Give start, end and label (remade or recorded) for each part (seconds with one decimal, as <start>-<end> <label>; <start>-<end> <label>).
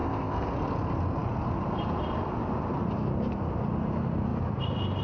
0.0-0.5 remade; 0.5-5.0 recorded